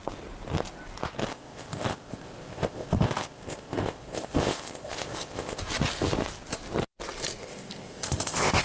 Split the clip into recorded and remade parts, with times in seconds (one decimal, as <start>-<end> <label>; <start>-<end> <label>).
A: 0.0-1.3 recorded; 1.3-5.6 remade; 5.6-7.4 recorded; 7.4-8.6 remade